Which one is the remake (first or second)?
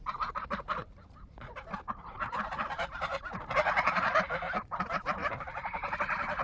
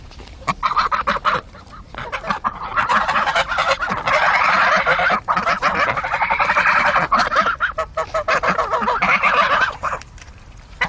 first